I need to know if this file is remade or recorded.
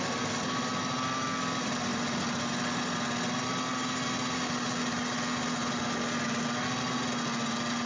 recorded